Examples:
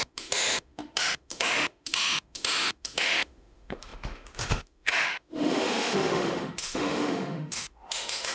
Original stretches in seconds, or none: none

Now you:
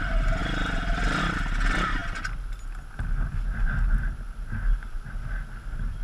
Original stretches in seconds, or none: 0.0-6.0

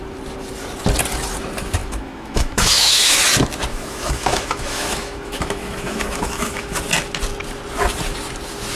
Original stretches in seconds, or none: 0.0-1.8; 3.2-3.7; 6.8-8.8

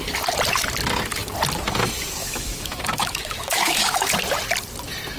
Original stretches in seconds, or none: 0.0-2.2; 4.1-5.2

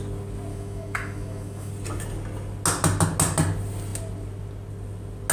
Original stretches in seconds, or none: 0.0-0.5; 1.7-5.3

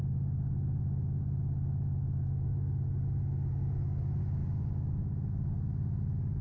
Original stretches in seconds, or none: 0.0-6.4

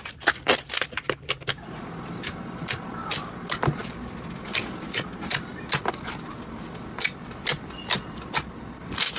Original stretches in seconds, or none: 0.0-9.2